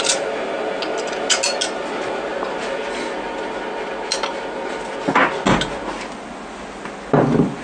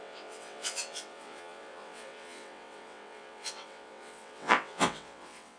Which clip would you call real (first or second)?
first